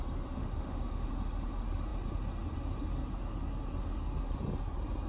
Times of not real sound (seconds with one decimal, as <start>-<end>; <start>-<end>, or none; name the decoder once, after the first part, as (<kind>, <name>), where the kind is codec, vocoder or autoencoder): 0.4-1.1 (autoencoder, DAC-VAE)